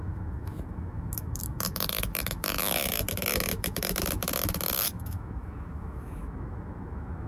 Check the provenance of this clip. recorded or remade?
remade